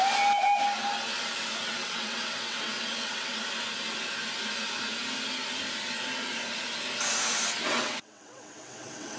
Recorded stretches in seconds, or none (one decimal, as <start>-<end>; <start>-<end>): 0.0-1.6; 3.3-7.7